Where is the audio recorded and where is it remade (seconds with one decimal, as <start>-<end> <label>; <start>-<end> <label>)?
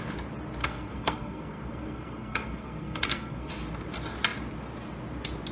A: 0.0-0.6 recorded; 0.6-3.5 remade; 3.5-5.5 recorded